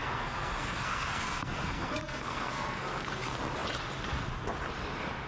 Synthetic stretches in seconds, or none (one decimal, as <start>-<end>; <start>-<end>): 0.0-3.2